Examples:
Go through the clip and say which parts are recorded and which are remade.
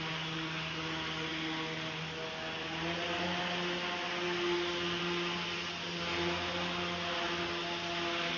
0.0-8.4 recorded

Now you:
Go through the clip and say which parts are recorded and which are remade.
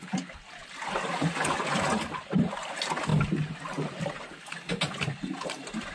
0.0-5.9 recorded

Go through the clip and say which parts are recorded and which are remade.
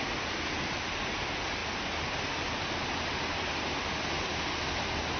0.0-5.2 recorded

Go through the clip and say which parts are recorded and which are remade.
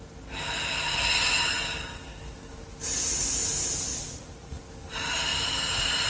0.0-3.9 recorded; 3.9-4.6 remade; 4.6-6.1 recorded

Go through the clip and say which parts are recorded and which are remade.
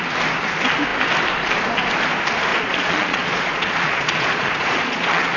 0.0-2.5 recorded; 2.5-5.4 remade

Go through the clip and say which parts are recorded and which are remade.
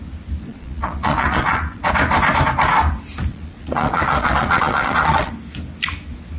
0.0-0.5 recorded; 0.5-1.9 remade; 1.9-3.3 recorded; 3.3-5.3 remade; 5.3-6.4 recorded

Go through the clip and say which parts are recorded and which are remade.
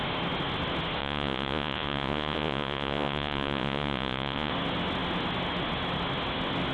0.0-1.0 recorded; 1.0-4.5 remade; 4.5-6.7 recorded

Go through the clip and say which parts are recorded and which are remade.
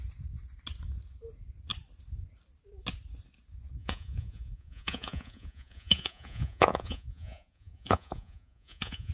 0.0-3.8 recorded; 3.8-9.1 remade